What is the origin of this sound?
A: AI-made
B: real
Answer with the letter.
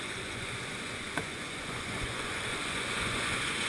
A